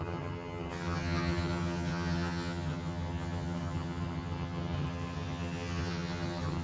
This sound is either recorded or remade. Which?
remade